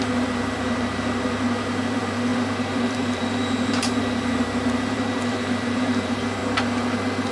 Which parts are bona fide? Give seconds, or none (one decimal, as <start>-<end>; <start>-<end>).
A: 6.4-7.3